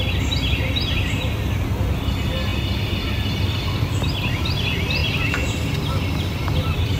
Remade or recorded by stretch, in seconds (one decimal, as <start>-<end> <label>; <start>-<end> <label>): 0.0-7.0 recorded